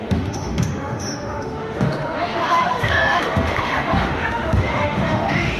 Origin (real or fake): fake